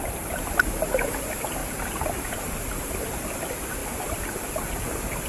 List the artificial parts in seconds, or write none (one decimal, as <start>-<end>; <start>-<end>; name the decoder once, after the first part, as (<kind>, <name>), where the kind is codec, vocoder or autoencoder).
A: 1.6-2.2 (vocoder, BigVGAN v2); 3.8-4.5